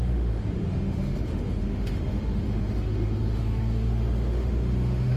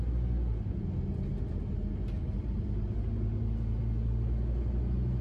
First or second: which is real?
second